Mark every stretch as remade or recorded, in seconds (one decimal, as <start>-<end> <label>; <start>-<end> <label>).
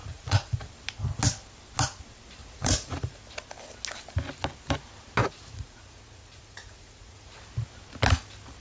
0.0-0.7 remade; 0.7-2.4 recorded; 2.4-3.2 remade; 3.2-5.2 recorded; 5.2-7.4 remade; 7.4-8.6 recorded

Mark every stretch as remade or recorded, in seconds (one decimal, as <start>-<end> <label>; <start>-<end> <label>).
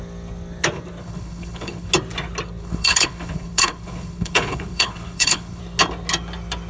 0.0-1.0 recorded; 1.0-1.9 remade; 1.9-2.6 recorded; 2.6-5.6 remade; 5.6-6.7 recorded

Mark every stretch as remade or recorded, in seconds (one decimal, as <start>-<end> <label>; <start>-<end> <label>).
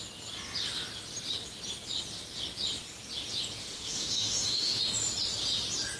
0.0-3.6 recorded; 3.6-4.8 remade; 4.8-6.0 recorded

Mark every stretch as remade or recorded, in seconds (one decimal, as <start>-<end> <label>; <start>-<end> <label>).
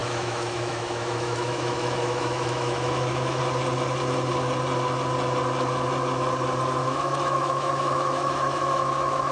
0.0-3.4 remade; 3.4-6.8 recorded; 6.8-9.3 remade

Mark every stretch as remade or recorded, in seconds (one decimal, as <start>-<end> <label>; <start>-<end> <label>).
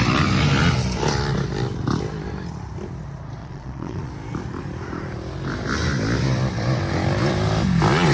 0.0-3.4 recorded; 3.4-4.1 remade; 4.1-8.1 recorded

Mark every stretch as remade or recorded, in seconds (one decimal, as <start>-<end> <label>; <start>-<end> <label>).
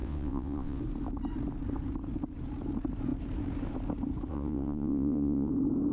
0.0-0.8 remade; 0.8-4.3 recorded; 4.3-5.5 remade; 5.5-5.9 recorded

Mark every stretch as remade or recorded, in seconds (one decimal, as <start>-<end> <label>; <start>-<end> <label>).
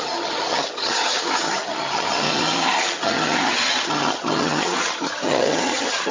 0.0-6.1 remade